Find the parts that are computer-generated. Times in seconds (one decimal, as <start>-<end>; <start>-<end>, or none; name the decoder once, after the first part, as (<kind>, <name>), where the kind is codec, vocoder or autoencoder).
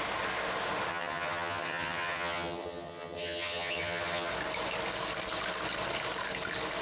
0.9-4.3 (vocoder, HiFi-GAN)